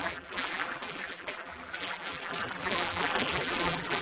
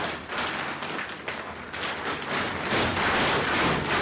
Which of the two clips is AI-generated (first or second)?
first